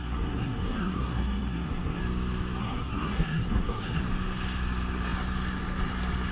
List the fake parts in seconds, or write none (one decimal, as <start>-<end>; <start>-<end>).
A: 0.0-2.0; 2.6-4.0